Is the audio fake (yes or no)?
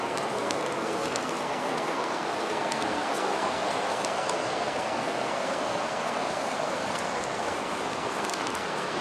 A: yes